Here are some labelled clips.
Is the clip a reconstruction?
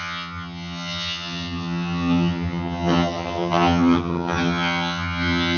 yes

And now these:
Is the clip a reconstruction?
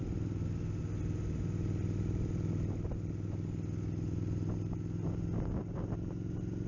no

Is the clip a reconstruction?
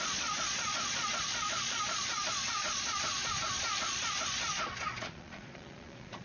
yes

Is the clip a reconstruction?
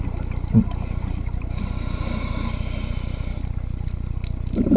no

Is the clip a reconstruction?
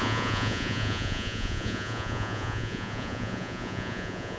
yes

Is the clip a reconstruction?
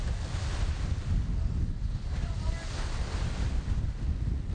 no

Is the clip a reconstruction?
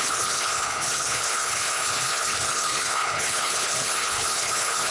yes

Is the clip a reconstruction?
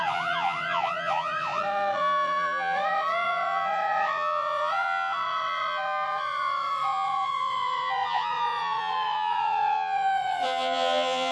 yes